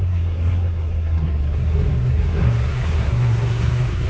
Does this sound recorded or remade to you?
remade